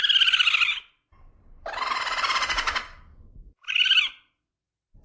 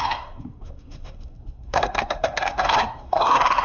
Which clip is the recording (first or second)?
first